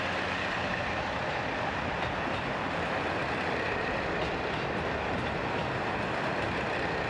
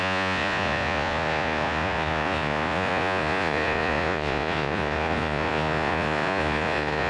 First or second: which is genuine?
first